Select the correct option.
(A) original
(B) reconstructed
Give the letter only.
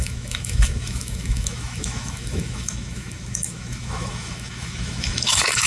B